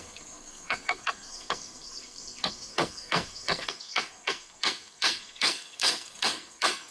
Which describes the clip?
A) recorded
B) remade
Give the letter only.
B